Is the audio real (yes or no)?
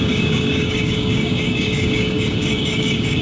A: no